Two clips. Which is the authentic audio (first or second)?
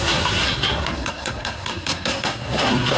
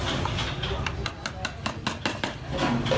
second